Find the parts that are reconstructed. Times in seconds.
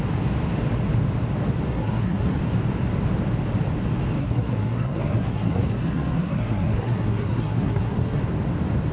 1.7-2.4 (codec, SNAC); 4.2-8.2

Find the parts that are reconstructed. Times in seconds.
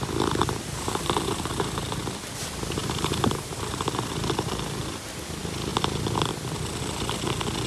0.4-2.0 (vocoder, BigVGAN v2); 2.8-4.1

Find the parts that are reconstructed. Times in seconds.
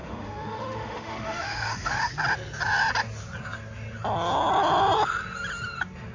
0.0-2.1 (autoencoder, DAC-VAE)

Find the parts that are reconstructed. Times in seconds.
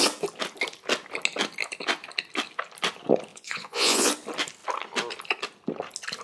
3.3-4.1 (vocoder, Vocos)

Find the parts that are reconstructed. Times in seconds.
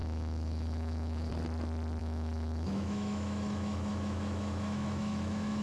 0.0-1.3 (autoencoder, DAC-VAE); 2.0-5.6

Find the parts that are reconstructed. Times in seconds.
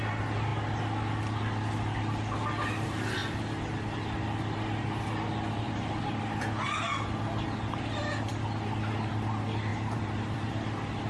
9.7-10.5 (vocoder, BigVGAN v2)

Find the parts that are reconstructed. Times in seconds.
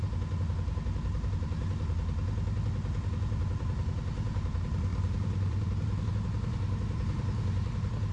4.9-6.1 (vocoder, BigVGAN v2)